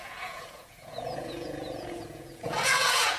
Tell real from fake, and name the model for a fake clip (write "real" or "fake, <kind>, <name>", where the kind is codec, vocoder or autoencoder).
fake, vocoder, Vocos